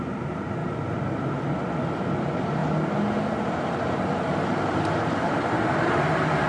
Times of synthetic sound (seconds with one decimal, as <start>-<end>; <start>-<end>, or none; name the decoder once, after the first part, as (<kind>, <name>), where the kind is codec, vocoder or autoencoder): 0.0-0.6 (vocoder, BigVGAN v2); 2.2-2.6; 4.5-6.5